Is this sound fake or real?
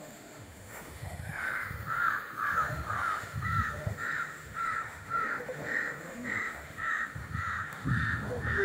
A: fake